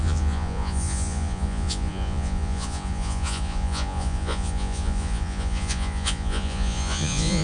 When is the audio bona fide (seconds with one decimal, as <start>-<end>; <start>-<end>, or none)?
none